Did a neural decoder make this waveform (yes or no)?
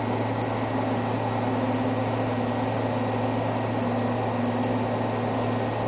no